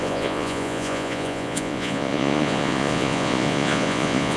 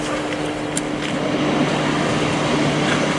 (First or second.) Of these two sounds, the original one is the second